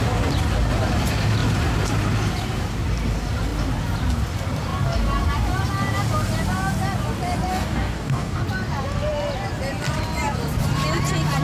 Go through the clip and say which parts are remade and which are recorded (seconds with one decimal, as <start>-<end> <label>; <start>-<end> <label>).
0.0-7.5 recorded; 7.5-8.4 remade; 8.4-11.4 recorded